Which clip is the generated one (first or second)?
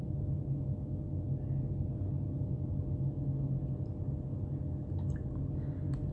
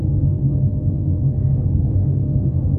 second